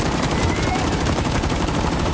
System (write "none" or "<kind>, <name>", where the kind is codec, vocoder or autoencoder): vocoder, BigVGAN v2